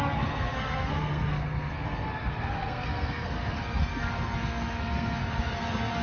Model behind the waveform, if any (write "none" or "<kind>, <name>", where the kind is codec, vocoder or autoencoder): codec, SNAC